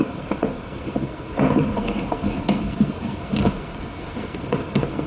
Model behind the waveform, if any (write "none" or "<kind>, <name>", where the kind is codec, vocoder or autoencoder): codec, SNAC